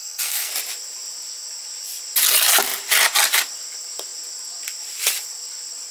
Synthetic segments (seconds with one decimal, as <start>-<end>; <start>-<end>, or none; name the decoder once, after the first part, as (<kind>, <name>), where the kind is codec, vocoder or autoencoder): 0.0-0.5 (codec, SNAC)